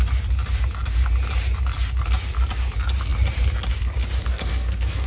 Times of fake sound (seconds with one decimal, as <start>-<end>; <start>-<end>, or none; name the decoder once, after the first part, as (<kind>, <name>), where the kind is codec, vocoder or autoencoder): 4.3-5.1 (codec, SNAC)